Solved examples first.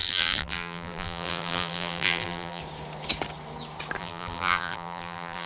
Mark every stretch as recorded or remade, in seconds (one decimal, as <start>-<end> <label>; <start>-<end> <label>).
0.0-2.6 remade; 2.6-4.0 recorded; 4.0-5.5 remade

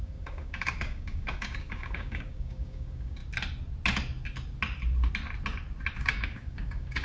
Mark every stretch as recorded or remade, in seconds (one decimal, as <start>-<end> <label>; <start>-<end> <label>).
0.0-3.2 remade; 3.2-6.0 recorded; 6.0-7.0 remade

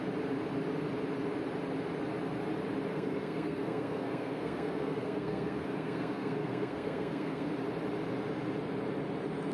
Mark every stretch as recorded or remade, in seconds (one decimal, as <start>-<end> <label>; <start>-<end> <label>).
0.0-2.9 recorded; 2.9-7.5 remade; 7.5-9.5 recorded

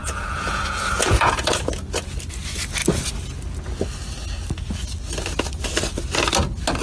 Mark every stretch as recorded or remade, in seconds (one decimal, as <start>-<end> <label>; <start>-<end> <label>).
0.0-1.7 remade; 1.7-6.8 recorded

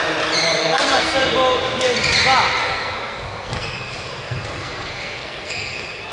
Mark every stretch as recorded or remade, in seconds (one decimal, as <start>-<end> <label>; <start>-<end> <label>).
0.0-0.6 recorded; 0.6-1.2 remade; 1.2-2.6 recorded; 2.6-6.1 remade